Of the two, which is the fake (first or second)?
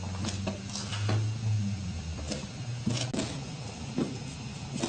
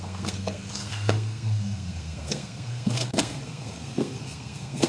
second